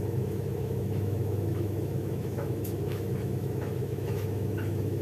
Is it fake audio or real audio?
fake